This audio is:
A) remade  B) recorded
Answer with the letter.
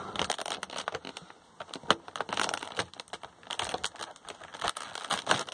B